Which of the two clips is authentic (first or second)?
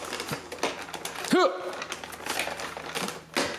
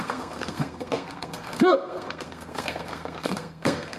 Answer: first